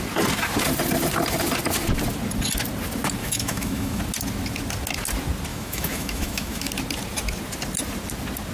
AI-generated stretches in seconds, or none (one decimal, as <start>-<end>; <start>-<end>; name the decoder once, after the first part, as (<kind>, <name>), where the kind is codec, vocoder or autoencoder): 3.2-4.0 (autoencoder, DAC-VAE); 5.5-6.7